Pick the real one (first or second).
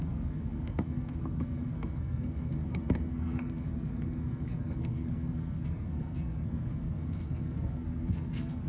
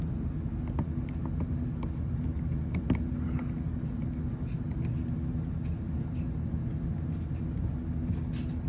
second